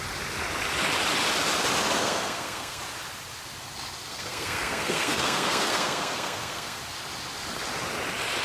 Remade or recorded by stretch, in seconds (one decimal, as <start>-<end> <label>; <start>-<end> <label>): 0.0-2.0 recorded; 2.0-2.8 remade; 2.8-4.1 recorded; 4.1-6.8 remade; 6.8-8.4 recorded